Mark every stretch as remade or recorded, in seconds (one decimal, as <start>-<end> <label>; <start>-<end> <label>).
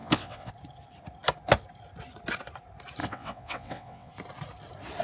0.0-0.5 remade; 0.5-3.0 recorded; 3.0-4.1 remade; 4.1-5.0 recorded